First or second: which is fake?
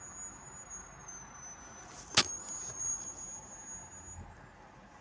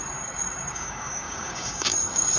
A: second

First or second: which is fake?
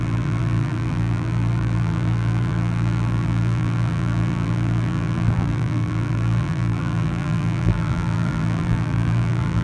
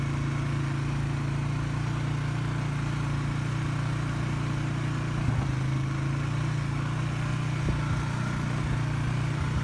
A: first